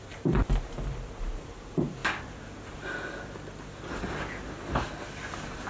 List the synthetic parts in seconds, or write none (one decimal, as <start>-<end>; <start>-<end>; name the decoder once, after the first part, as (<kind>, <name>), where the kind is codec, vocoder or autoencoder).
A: 0.0-2.0 (vocoder, BigVGAN v2)